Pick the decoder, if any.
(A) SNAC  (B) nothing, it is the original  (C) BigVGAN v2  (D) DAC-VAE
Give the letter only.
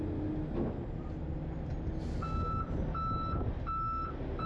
B